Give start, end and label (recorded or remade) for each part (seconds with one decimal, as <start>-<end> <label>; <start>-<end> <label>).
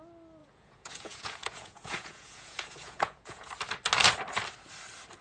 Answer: 0.0-0.4 recorded; 0.4-3.5 remade; 3.5-5.2 recorded